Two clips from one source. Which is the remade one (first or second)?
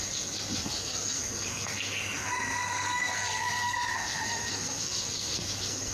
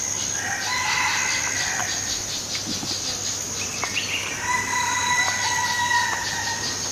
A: first